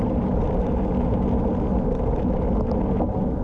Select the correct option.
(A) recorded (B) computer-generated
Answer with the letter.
A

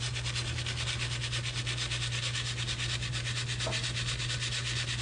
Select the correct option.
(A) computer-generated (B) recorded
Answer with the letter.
B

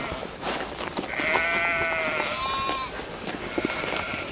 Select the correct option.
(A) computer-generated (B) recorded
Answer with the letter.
B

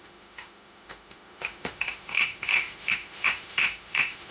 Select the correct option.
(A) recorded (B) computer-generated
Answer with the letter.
B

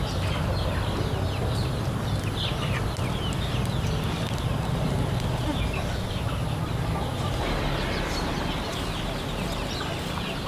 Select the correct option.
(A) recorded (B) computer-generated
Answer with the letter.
A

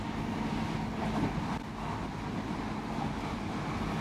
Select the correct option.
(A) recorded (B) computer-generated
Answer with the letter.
A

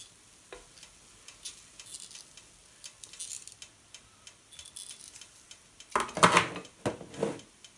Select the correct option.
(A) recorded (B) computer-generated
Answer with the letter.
A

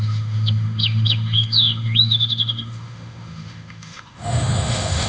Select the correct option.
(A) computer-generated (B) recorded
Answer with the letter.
A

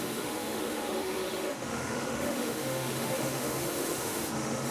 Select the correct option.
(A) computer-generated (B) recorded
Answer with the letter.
A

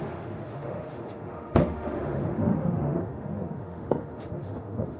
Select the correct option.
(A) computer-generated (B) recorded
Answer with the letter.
A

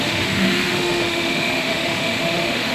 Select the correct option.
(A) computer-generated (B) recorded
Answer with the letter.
A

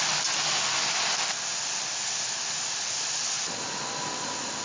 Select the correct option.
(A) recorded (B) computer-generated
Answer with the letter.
A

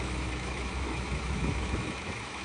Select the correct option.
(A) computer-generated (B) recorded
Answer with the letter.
A